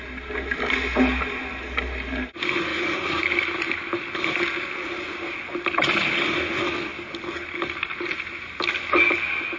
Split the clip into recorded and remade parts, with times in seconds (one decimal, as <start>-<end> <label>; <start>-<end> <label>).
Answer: 0.0-2.7 recorded; 2.7-4.9 remade; 4.9-9.6 recorded